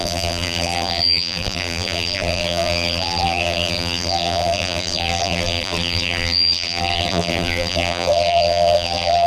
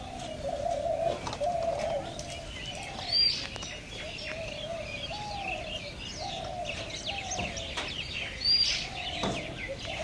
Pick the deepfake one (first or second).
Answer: first